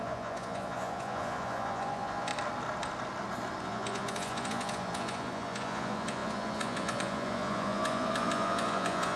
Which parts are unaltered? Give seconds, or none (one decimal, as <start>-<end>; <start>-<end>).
2.3-3.6